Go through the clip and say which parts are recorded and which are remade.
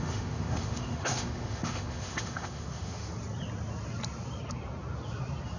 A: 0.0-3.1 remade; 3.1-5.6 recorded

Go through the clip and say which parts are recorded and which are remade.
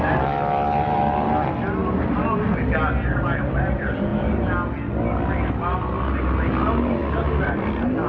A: 0.0-8.1 recorded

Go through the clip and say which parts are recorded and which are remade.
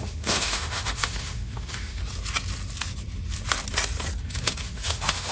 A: 0.0-2.0 remade; 2.0-4.2 recorded; 4.2-5.3 remade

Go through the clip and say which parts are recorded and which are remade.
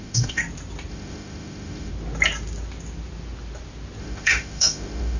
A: 0.0-0.4 remade; 0.4-0.9 recorded; 0.9-1.9 remade; 1.9-4.0 recorded; 4.0-5.2 remade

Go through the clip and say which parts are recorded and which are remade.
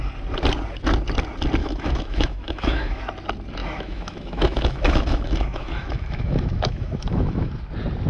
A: 0.0-1.6 recorded; 1.6-3.0 remade; 3.0-3.6 recorded; 3.6-7.5 remade; 7.5-8.1 recorded